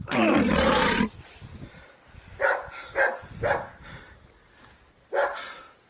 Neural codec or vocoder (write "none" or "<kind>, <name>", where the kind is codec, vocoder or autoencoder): none